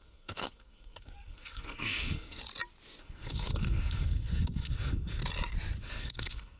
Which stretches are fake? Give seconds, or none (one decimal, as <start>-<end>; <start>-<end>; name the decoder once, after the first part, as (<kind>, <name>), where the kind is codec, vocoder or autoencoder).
0.0-2.4 (codec, SNAC); 3.0-5.2; 5.8-6.6